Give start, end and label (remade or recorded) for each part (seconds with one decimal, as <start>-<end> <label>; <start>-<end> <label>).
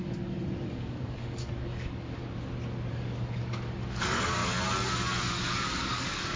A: 0.0-2.2 remade; 2.2-2.9 recorded; 2.9-4.4 remade; 4.4-5.5 recorded; 5.5-6.4 remade